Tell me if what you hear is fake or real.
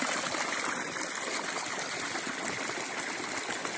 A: real